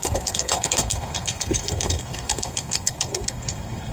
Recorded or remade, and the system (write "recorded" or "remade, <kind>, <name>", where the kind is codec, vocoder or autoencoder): remade, codec, SNAC